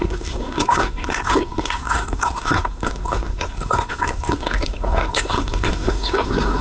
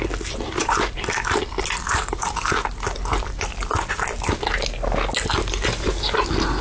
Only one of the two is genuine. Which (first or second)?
second